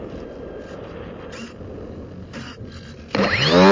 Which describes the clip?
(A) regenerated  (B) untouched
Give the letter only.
B